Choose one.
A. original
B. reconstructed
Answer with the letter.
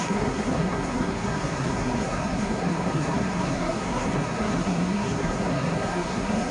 B